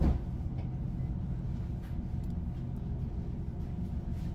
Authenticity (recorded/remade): recorded